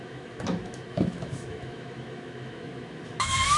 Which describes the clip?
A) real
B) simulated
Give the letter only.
B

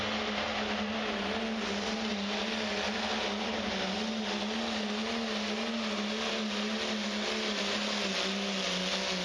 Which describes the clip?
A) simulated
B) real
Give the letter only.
B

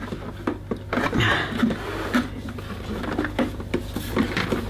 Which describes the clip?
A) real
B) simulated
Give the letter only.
A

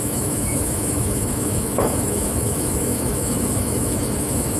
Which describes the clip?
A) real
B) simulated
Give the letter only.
B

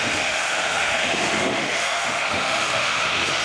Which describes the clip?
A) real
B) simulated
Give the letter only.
B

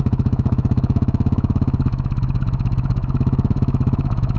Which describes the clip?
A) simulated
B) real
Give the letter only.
A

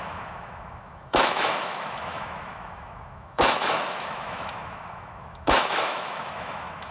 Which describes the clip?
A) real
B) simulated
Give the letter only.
B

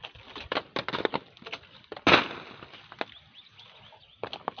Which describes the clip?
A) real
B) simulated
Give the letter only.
A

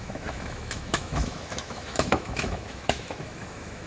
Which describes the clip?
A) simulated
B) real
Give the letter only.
A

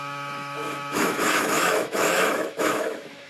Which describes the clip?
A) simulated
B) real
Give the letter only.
A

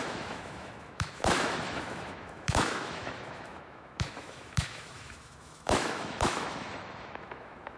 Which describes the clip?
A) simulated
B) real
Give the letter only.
A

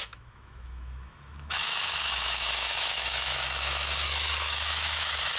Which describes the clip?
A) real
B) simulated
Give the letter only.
B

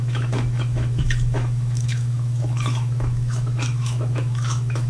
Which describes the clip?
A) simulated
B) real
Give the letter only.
A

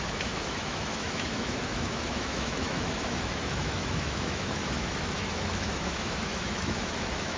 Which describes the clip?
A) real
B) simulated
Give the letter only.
B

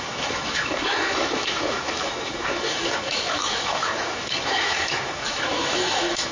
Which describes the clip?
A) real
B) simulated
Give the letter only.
B